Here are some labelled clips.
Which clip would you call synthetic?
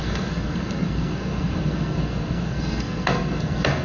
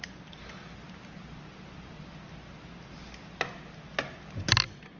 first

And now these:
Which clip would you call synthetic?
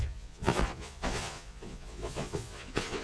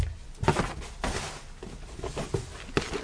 first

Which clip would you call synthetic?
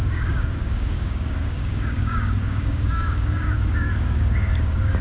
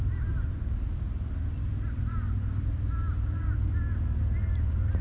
first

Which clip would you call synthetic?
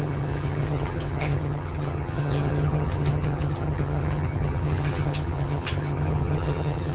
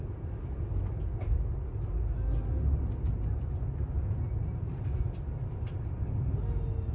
first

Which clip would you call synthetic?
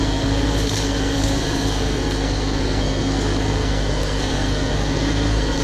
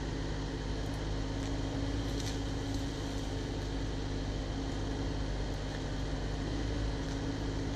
first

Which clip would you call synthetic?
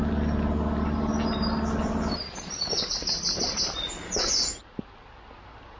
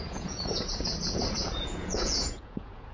second